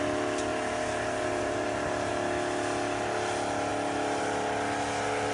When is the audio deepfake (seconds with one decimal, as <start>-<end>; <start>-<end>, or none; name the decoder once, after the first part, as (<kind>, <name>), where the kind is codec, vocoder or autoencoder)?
0.5-2.1 (vocoder, BigVGAN v2)